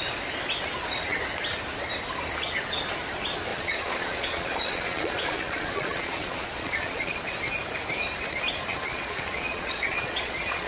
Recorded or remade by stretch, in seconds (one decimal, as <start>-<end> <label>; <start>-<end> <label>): 0.0-3.5 recorded; 3.5-7.2 remade; 7.2-8.7 recorded; 8.7-10.7 remade